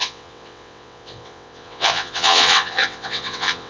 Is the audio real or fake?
fake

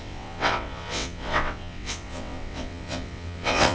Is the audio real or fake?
fake